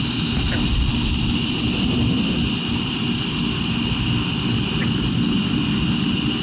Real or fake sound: real